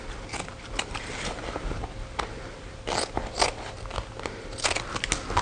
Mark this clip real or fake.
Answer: real